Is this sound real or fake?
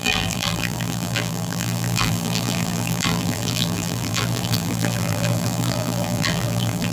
fake